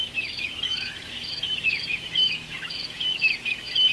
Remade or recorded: remade